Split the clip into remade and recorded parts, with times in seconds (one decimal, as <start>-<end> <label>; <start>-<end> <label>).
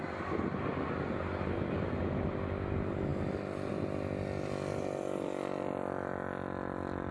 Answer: 0.0-7.1 recorded